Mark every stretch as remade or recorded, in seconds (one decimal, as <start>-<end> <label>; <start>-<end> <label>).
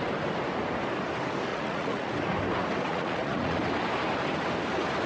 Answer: 0.0-1.5 recorded; 1.5-2.1 remade; 2.1-2.9 recorded; 2.9-3.6 remade; 3.6-5.1 recorded